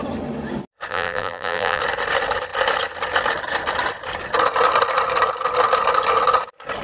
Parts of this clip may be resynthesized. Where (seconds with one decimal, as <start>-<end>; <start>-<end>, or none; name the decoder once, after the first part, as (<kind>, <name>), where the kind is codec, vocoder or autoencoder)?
0.9-1.8 (vocoder, BigVGAN v2)